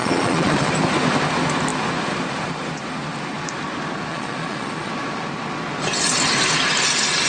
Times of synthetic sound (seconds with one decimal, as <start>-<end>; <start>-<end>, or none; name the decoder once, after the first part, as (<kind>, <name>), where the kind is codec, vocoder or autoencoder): 0.0-0.7 (vocoder, Vocos); 4.1-4.9